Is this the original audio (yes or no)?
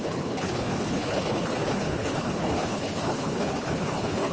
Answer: no